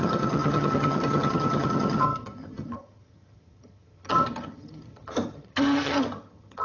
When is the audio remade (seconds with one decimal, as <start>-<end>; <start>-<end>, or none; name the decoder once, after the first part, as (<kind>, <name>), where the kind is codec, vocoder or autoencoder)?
0.0-6.6 (vocoder, HiFi-GAN)